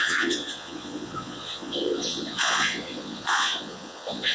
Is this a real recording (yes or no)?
no